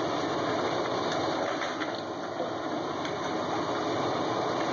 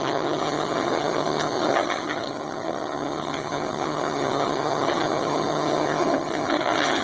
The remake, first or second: second